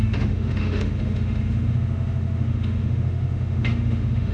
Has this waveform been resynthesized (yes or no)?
yes